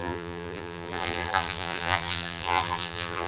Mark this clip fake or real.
fake